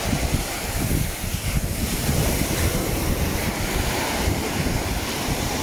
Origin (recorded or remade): remade